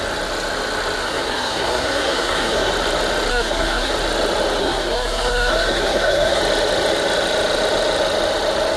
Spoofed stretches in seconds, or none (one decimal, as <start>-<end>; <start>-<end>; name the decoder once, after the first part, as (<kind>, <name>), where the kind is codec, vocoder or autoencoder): 1.0-2.7 (codec, SNAC); 3.3-3.9; 4.6-6.4